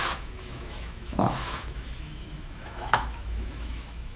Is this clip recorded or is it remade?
remade